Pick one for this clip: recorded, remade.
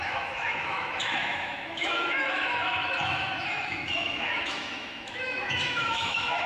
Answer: remade